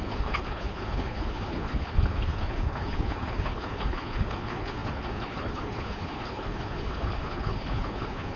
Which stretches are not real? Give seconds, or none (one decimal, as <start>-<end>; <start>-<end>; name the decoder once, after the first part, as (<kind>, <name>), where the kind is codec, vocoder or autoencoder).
0.0-8.4 (codec, HILCodec)